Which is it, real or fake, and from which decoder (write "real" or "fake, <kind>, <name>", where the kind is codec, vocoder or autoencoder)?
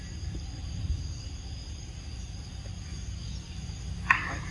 real